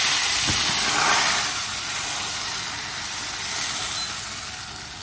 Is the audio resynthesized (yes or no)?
no